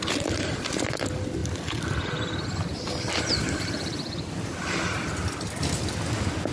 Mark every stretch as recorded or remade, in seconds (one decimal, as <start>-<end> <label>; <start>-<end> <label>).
0.0-1.4 recorded; 1.4-5.3 remade; 5.3-6.5 recorded